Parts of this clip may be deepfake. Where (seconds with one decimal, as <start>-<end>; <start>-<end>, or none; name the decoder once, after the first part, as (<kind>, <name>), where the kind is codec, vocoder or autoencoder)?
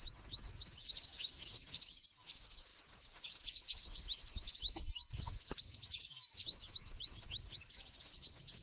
0.0-8.6 (autoencoder, DAC-VAE)